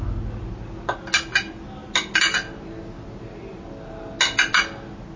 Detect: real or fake real